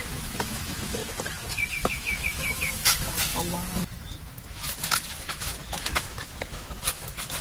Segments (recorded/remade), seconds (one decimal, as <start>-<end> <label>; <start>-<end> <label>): 0.0-1.0 remade; 1.0-1.7 recorded; 1.7-3.3 remade; 3.3-3.8 recorded; 3.8-7.4 remade